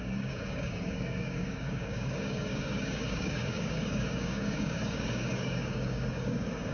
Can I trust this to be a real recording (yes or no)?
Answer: no